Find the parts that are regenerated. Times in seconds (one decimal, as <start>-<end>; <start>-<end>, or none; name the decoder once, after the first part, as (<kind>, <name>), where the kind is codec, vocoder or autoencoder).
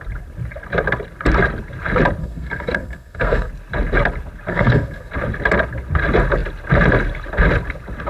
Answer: 2.2-3.5 (codec, SNAC); 4.5-5.1